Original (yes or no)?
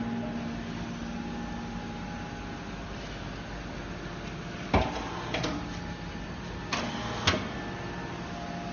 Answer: yes